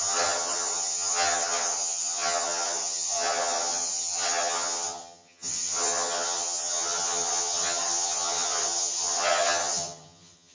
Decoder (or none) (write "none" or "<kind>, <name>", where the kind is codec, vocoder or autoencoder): vocoder, HiFi-GAN